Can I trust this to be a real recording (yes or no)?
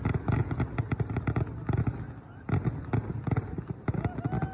yes